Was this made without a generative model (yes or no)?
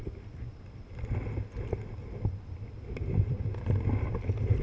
yes